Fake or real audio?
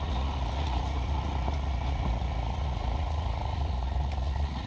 fake